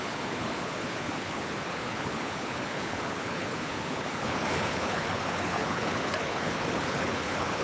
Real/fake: fake